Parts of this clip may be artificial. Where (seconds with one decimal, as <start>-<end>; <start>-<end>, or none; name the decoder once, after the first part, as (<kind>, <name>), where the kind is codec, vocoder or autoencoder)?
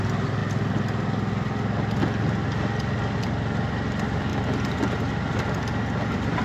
none